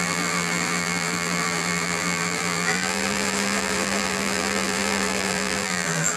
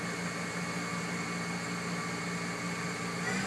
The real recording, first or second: second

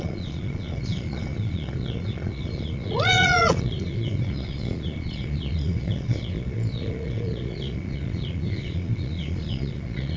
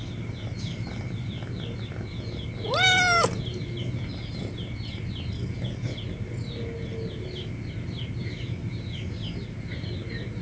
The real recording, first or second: second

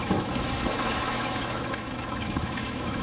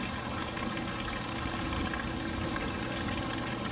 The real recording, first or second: second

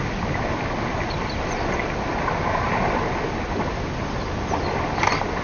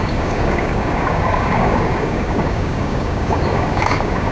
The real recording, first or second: first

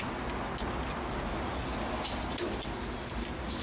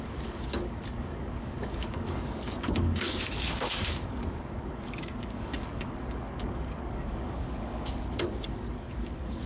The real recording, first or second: first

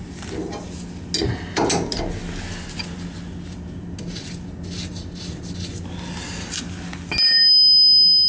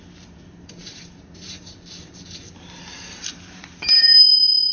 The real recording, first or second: first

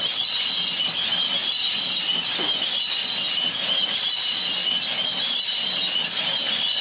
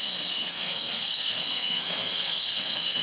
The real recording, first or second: first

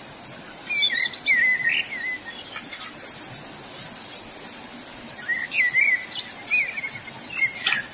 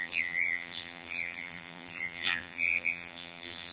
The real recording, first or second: first